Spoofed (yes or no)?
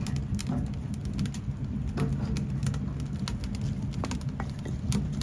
no